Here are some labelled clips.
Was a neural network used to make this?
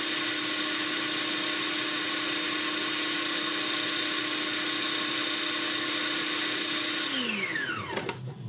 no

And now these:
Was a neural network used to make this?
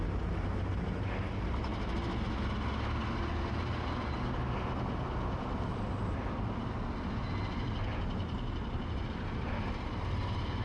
no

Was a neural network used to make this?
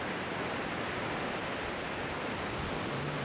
no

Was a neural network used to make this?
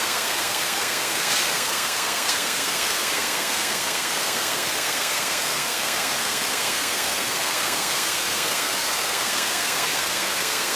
yes